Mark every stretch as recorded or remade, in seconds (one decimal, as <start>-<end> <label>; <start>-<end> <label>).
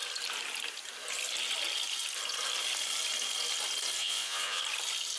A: 0.0-4.0 recorded; 4.0-4.6 remade; 4.6-5.2 recorded